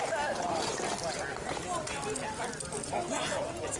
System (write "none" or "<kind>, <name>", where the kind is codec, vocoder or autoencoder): none